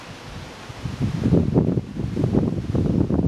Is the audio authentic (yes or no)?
yes